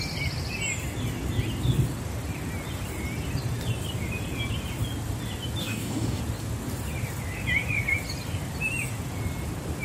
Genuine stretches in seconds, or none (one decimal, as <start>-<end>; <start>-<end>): 0.0-5.6; 6.2-9.8